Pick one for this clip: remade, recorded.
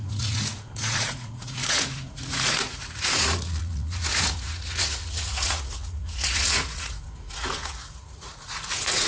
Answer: remade